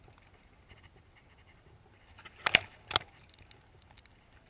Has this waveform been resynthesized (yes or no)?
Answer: no